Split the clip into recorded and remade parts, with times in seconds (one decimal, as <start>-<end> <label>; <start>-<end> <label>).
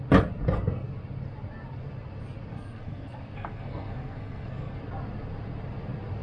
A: 0.0-2.5 recorded; 2.5-4.8 remade; 4.8-6.2 recorded